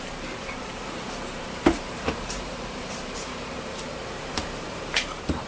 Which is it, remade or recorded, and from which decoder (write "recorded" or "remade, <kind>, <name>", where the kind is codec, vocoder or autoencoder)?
remade, vocoder, BigVGAN v2